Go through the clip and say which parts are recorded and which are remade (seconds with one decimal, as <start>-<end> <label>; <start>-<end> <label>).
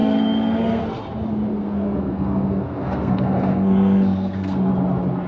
0.0-0.8 remade; 0.8-1.5 recorded; 1.5-4.7 remade; 4.7-5.3 recorded